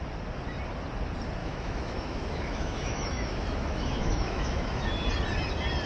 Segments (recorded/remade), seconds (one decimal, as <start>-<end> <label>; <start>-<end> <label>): 0.0-1.4 recorded; 1.4-4.9 remade; 4.9-5.9 recorded